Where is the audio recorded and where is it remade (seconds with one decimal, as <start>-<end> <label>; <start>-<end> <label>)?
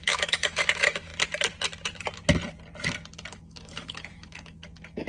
0.0-1.1 remade; 1.1-3.3 recorded; 3.3-5.1 remade